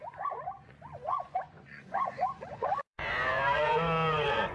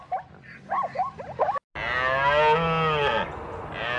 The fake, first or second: first